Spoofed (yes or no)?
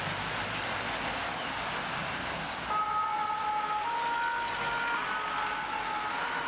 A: no